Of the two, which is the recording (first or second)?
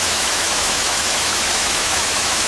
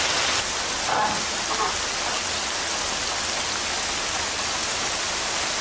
second